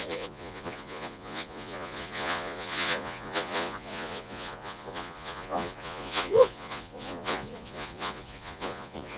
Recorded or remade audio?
remade